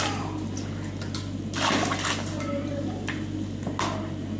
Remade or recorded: recorded